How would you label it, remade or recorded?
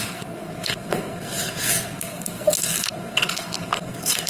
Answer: remade